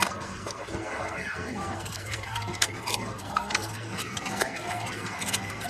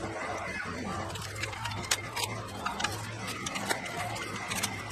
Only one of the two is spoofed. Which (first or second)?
first